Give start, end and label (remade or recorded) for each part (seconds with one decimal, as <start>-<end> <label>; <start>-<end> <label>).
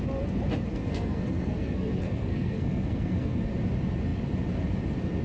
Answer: 0.0-0.7 recorded; 0.7-3.5 remade; 3.5-5.2 recorded